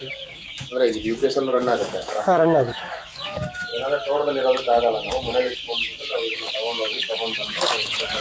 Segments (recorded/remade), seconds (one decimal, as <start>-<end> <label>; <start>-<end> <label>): 0.0-3.7 remade; 3.7-5.1 recorded; 5.1-8.2 remade